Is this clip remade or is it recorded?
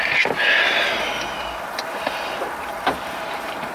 recorded